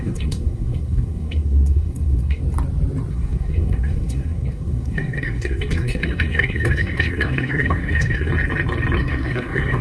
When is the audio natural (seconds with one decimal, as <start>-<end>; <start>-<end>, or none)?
2.4-3.1; 8.3-9.0